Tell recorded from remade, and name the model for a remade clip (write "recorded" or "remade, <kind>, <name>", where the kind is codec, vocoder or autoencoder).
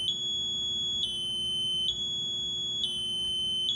recorded